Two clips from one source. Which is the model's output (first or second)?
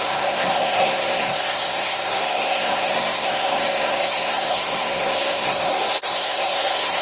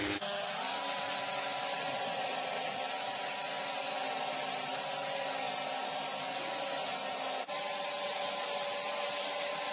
first